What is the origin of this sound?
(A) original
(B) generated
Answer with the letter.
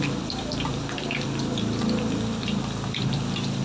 B